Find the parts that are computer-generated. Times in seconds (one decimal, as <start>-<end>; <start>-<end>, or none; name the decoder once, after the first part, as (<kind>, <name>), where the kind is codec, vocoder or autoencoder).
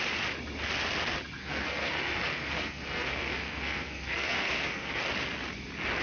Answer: 1.4-5.0 (codec, SNAC)